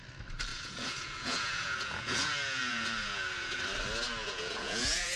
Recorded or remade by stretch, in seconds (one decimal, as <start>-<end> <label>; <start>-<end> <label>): 0.0-0.5 recorded; 0.5-3.6 remade; 3.6-4.2 recorded; 4.2-5.2 remade